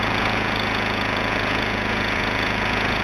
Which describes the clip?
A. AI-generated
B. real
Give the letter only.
A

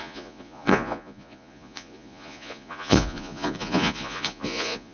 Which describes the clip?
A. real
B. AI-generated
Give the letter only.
B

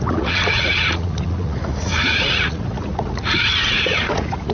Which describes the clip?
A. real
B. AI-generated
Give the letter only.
B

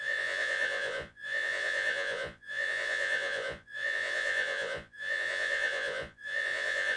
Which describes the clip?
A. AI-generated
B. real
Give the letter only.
A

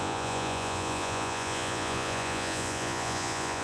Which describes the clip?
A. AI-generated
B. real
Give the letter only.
A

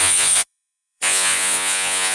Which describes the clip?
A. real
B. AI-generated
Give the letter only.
B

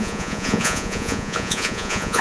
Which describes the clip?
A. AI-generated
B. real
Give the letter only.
A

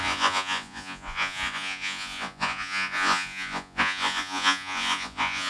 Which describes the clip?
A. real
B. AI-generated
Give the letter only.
B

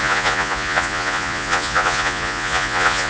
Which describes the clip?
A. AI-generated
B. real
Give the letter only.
A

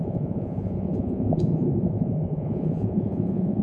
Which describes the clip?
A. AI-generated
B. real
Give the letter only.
A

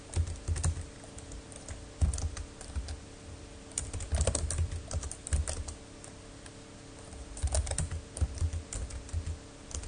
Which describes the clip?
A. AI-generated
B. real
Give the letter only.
B